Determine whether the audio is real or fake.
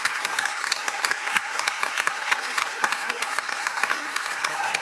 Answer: fake